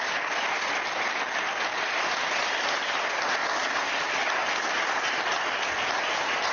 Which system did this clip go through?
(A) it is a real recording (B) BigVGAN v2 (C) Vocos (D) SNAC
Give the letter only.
A